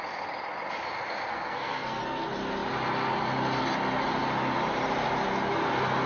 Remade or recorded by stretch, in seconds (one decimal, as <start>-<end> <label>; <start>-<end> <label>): 0.0-1.3 recorded; 1.3-2.0 remade; 2.0-6.1 recorded